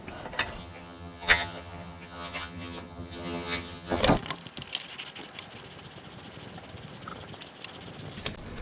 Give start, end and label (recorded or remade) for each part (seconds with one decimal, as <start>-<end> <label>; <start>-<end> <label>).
0.0-0.6 recorded; 0.6-4.0 remade; 4.0-8.6 recorded